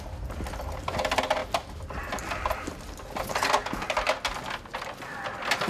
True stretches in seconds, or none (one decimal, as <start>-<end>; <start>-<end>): 0.0-1.4; 2.0-5.7